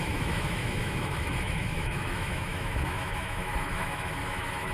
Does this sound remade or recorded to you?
remade